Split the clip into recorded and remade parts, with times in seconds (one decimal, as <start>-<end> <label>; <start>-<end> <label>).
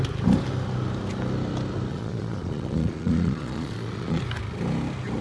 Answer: 0.0-1.9 recorded; 1.9-4.2 remade; 4.2-5.2 recorded